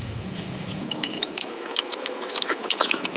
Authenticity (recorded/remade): remade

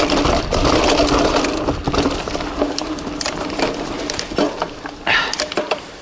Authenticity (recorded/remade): recorded